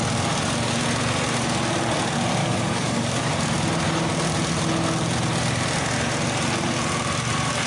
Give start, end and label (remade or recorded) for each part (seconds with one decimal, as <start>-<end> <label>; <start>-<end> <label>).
0.0-2.4 recorded; 2.4-3.3 remade; 3.3-7.7 recorded